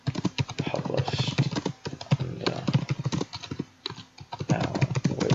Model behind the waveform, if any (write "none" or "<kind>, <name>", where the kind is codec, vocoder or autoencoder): none